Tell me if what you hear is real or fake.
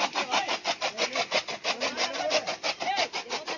real